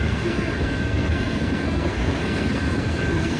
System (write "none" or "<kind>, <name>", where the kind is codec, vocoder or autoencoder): codec, SNAC